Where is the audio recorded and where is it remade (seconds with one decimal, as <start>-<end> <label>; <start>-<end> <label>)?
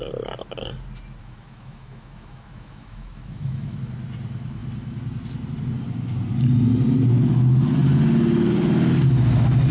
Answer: 0.0-1.2 recorded; 1.2-3.8 remade; 3.8-9.7 recorded